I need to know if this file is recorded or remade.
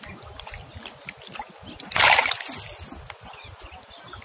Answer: recorded